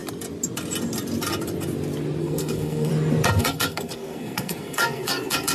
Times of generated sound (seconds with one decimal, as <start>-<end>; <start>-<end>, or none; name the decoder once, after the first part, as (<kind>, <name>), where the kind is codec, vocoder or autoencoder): 2.2-2.9 (codec, SNAC); 3.4-5.5